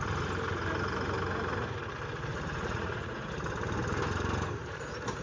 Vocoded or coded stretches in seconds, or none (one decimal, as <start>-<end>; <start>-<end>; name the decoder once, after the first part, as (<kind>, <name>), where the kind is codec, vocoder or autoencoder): 2.3-3.3 (vocoder, Vocos)